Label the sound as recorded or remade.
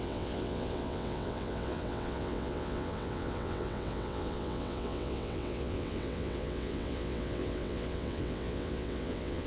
remade